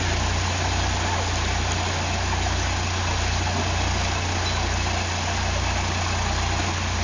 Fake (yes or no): no